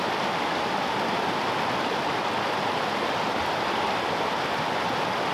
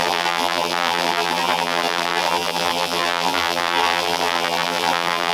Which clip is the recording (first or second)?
first